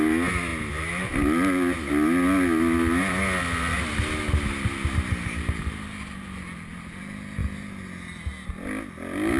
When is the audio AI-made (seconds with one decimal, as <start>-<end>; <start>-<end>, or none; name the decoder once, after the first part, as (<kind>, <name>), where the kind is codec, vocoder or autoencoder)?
none